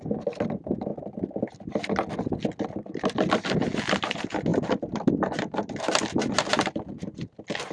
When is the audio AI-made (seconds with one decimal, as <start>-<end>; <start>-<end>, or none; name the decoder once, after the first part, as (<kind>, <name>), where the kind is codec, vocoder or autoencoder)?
0.9-1.4 (vocoder, BigVGAN v2); 4.5-6.3